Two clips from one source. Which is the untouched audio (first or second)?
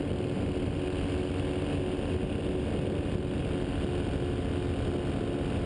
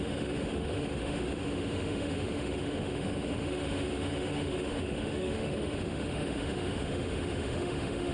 first